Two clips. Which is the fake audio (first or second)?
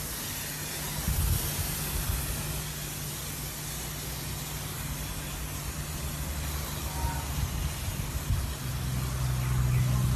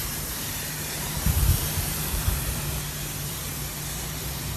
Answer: second